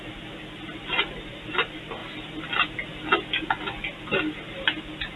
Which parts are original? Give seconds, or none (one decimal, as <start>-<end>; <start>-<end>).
0.0-5.2